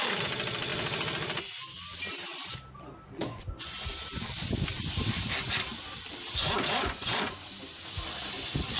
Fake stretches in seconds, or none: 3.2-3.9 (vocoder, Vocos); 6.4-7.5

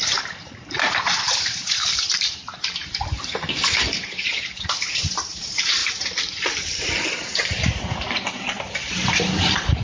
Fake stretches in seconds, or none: 0.0-9.8 (vocoder, BigVGAN v2)

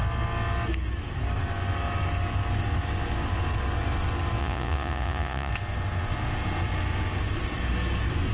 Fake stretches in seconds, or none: 4.4-5.5 (vocoder, Vocos)